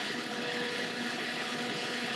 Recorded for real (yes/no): no